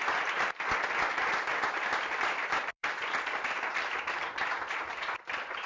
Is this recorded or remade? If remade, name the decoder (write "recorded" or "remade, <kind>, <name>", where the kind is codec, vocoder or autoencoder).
remade, vocoder, BigVGAN v2